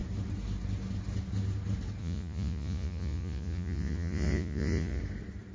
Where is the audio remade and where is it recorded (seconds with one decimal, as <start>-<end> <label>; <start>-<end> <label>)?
0.0-2.0 recorded; 2.0-5.0 remade; 5.0-5.5 recorded